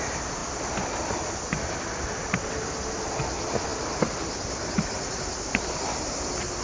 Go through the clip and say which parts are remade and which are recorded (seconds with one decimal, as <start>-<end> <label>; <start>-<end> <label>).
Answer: 0.0-0.4 recorded; 0.4-2.5 remade; 2.5-6.6 recorded